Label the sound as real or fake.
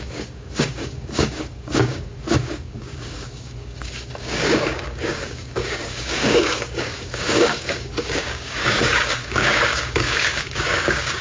fake